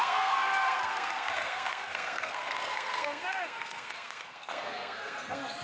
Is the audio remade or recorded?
remade